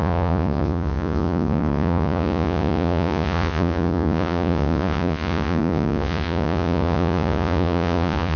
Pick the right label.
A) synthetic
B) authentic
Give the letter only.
A